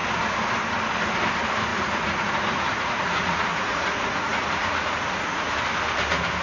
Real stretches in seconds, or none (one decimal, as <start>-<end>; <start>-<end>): 0.0-1.7; 5.5-6.4

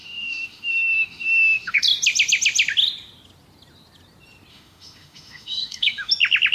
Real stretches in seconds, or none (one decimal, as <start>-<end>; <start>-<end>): 1.8-4.5; 6.1-6.5

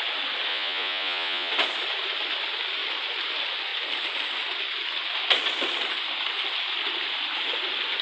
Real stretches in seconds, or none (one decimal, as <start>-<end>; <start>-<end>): 0.0-0.5; 1.5-8.0

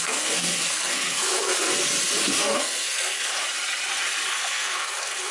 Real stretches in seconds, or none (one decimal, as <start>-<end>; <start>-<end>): 1.7-2.3; 3.3-4.3